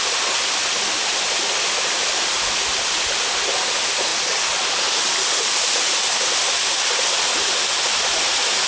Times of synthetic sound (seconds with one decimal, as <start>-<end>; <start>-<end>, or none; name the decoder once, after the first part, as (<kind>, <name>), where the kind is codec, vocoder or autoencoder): none